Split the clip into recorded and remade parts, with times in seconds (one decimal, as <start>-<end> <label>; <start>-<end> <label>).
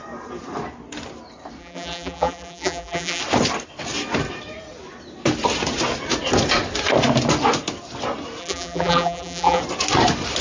0.0-1.6 recorded; 1.6-3.2 remade; 3.2-8.4 recorded; 8.4-9.6 remade; 9.6-10.4 recorded